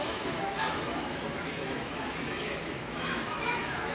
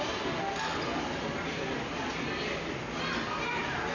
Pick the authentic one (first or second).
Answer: second